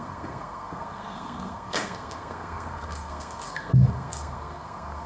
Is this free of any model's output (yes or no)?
no